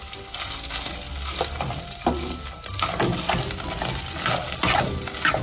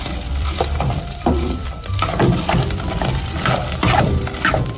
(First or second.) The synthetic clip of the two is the second